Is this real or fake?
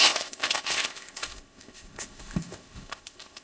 fake